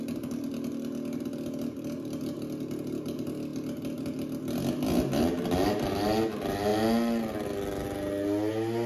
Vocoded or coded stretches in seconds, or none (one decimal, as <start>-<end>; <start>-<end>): none